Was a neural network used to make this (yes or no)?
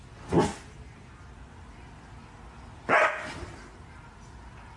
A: no